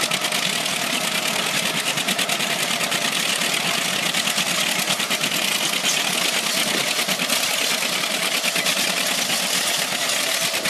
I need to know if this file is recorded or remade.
recorded